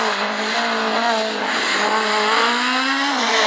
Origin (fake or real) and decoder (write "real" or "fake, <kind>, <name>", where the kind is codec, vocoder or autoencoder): real